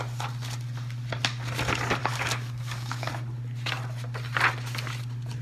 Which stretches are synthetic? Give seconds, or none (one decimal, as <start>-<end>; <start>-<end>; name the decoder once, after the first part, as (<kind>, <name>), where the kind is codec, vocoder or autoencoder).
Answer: 2.0-3.1 (codec, DAC)